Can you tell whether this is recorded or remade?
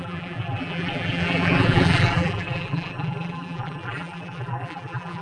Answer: remade